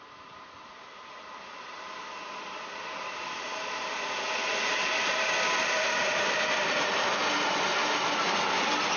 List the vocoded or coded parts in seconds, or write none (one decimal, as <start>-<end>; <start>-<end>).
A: none